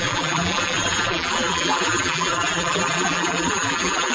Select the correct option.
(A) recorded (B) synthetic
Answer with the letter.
B